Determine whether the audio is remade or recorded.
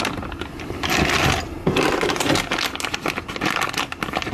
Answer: recorded